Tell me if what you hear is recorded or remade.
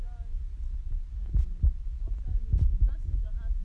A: recorded